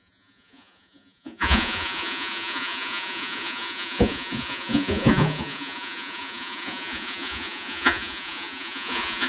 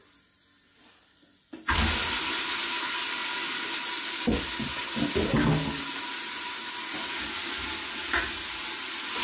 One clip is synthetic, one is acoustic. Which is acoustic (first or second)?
second